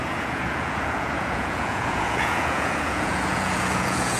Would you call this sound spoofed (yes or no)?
yes